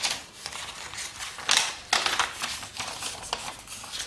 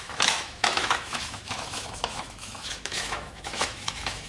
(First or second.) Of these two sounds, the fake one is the second